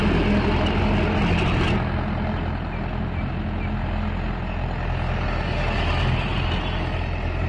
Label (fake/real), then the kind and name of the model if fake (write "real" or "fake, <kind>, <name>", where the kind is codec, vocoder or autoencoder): real